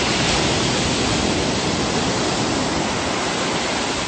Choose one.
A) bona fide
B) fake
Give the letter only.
A